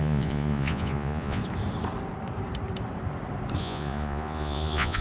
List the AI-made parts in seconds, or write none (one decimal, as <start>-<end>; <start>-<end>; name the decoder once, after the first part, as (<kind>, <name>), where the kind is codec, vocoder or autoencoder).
0.0-1.4 (vocoder, Vocos); 3.6-5.0